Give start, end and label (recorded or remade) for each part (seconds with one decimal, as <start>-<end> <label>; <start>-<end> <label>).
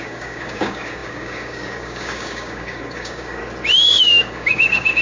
0.0-3.4 remade; 3.4-4.0 recorded; 4.0-5.0 remade